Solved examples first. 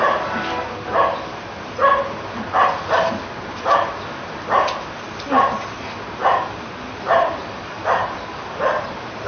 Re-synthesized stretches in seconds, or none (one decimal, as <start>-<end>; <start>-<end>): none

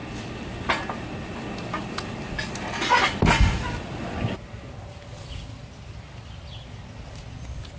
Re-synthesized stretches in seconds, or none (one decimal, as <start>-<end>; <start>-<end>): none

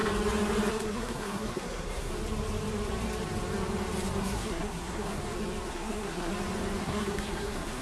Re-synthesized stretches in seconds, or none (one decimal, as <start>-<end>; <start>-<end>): 0.7-2.1; 4.2-5.2; 5.7-6.3; 6.8-7.8